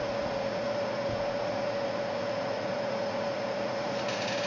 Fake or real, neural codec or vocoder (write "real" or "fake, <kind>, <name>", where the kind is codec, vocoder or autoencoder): fake, vocoder, Vocos